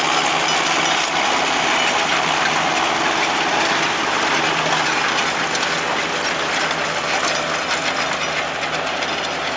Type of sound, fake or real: real